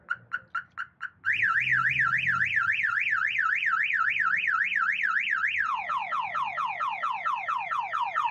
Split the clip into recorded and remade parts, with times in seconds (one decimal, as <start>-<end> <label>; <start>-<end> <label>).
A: 0.0-8.3 recorded